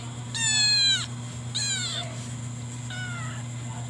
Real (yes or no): yes